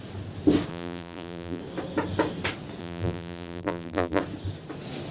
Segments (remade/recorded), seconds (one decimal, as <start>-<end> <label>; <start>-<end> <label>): 0.0-0.7 recorded; 0.7-1.6 remade; 1.6-2.8 recorded; 2.8-4.2 remade; 4.2-5.1 recorded